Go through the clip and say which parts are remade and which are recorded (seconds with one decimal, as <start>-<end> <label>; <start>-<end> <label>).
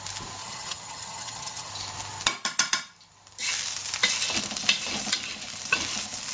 0.0-0.4 recorded; 0.4-1.7 remade; 1.7-6.3 recorded